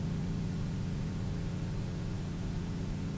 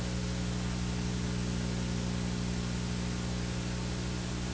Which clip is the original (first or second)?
second